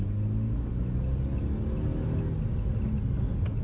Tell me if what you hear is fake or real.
real